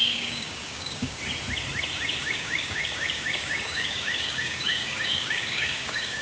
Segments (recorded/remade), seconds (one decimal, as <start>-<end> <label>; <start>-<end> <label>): 0.0-1.2 remade; 1.2-2.2 recorded; 2.2-6.2 remade